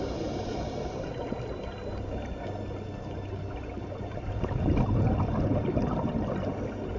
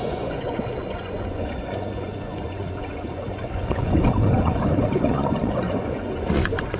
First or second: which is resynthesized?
second